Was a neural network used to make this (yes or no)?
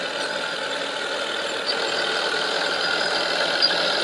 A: no